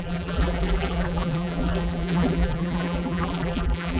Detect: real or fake fake